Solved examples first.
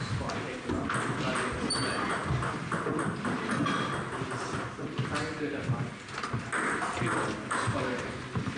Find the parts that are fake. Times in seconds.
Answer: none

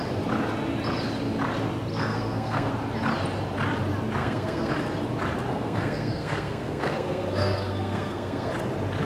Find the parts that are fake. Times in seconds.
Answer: 1.9-2.7 (codec, SNAC); 4.2-4.7; 5.5-8.5